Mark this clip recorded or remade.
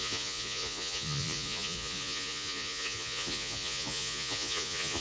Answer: remade